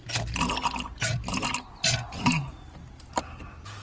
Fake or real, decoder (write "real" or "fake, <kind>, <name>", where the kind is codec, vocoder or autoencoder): real